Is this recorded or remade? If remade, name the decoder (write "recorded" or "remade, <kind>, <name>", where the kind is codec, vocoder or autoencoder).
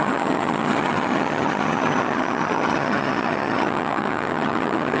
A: remade, vocoder, HiFi-GAN